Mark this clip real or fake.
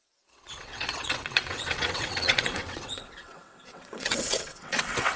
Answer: fake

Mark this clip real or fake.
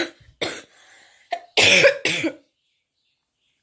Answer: real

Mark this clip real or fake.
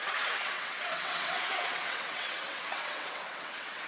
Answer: fake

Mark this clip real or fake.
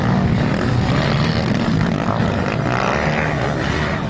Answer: real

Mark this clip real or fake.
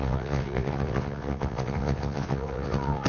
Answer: fake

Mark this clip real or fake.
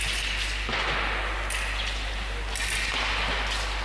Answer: real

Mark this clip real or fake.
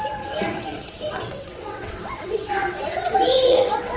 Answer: fake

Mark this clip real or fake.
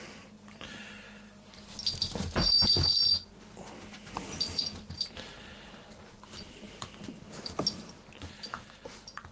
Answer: real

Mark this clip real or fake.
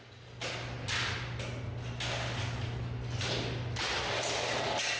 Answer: real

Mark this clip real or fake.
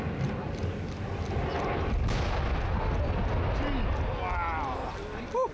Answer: real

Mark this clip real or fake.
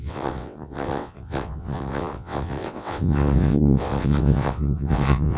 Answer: fake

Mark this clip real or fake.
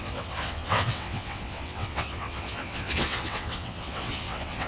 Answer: fake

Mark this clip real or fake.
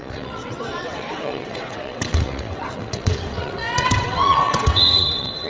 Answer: fake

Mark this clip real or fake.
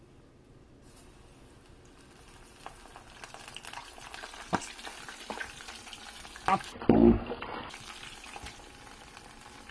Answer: real